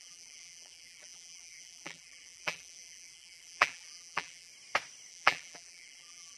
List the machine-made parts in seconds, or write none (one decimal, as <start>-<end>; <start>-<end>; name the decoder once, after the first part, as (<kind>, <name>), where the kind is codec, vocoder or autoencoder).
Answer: 0.0-4.5 (vocoder, BigVGAN v2); 5.1-6.4